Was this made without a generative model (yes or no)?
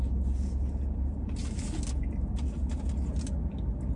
yes